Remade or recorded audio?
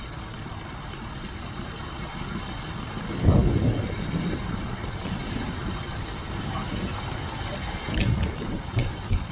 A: recorded